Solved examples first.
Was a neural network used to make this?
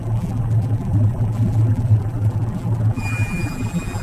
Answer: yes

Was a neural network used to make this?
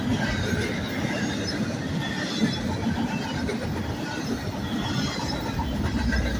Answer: no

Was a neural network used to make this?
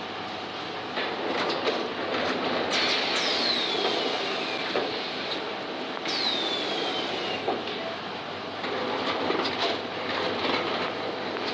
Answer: no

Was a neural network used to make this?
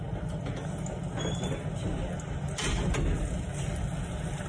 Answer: no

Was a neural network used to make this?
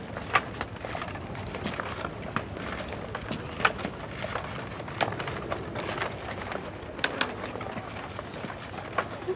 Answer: no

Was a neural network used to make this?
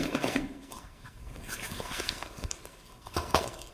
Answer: yes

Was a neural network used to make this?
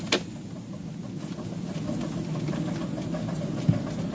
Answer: no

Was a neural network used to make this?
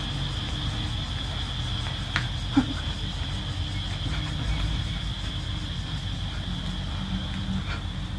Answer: no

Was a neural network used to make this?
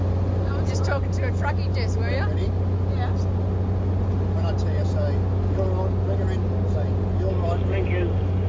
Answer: no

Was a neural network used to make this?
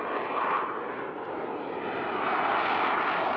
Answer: no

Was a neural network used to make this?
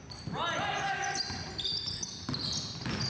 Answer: no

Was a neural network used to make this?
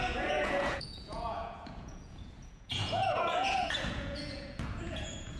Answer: yes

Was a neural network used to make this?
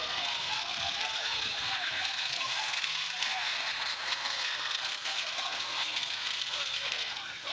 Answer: yes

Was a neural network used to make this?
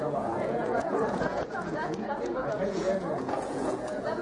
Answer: yes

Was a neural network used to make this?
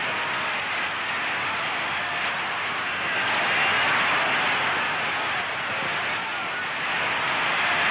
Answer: no